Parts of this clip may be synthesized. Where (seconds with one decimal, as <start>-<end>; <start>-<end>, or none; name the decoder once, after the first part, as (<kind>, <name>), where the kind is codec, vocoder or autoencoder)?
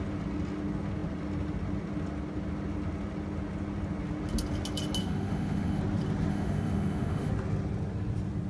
5.0-5.8 (autoencoder, DAC-VAE); 6.3-7.3